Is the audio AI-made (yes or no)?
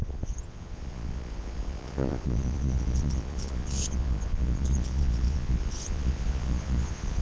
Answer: yes